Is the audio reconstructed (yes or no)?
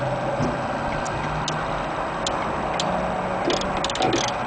no